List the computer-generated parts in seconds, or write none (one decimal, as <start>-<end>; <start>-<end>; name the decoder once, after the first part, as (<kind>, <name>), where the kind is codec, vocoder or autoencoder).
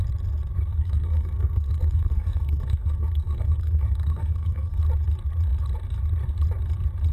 0.7-4.8 (codec, SNAC)